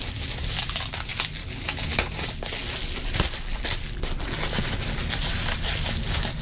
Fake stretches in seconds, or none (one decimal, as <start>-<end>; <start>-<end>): none